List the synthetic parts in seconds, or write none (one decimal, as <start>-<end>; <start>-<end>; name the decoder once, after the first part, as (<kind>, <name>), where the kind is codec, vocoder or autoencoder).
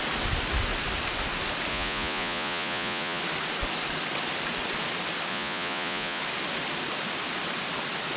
1.7-3.2 (vocoder, Vocos); 5.3-6.2